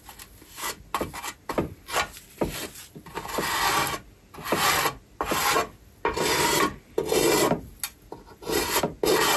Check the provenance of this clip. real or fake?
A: real